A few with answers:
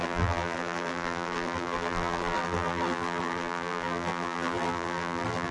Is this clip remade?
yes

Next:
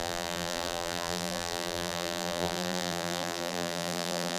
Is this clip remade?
yes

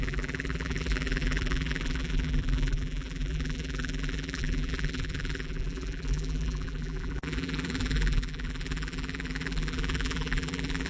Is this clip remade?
yes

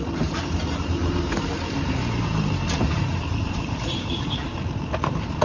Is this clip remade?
yes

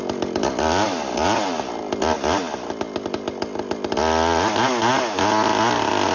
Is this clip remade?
no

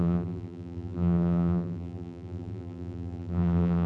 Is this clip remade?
yes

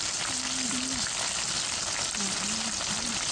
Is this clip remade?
no